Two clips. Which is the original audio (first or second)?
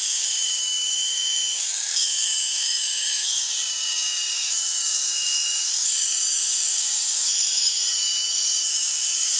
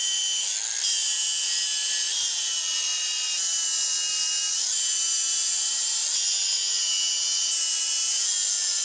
second